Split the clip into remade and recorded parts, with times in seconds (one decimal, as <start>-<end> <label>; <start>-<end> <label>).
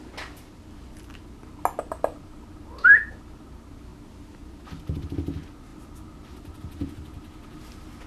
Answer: 0.0-8.1 recorded